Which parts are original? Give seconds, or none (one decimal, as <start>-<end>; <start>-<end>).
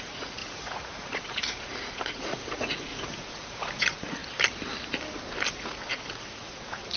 4.2-5.5